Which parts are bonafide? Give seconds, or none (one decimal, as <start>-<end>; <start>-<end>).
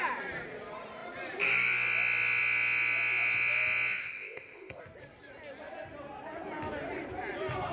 0.0-4.0; 4.8-7.7